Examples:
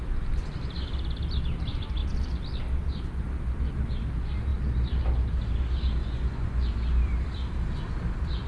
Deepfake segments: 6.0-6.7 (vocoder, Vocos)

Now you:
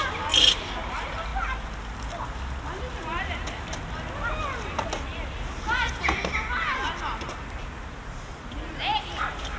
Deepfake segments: none

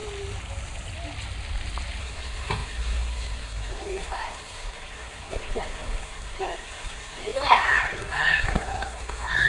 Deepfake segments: 2.0-9.5 (codec, SNAC)

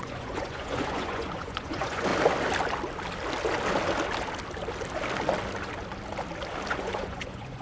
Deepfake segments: 0.0-2.1 (vocoder, Vocos); 6.7-7.6

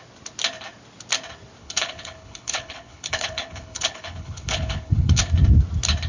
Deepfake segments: 1.6-5.3 (codec, HILCodec)